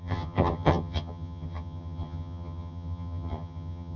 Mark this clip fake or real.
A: fake